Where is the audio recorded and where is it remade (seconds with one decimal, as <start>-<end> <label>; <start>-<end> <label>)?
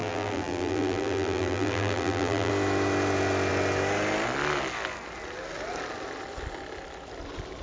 0.0-2.5 remade; 2.5-7.6 recorded